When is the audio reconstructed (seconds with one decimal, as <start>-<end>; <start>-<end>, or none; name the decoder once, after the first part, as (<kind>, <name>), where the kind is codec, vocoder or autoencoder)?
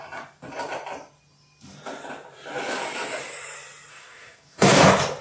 3.9-4.8 (codec, DAC)